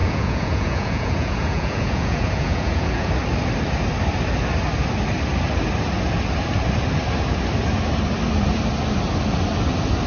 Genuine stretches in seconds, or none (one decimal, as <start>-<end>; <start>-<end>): 3.1-10.1